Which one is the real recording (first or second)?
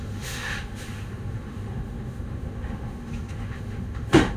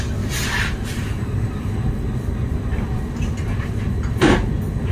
second